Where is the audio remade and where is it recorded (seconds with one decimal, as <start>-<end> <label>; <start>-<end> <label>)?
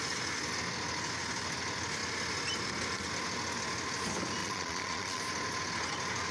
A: 0.0-4.4 recorded; 4.4-5.2 remade; 5.2-6.3 recorded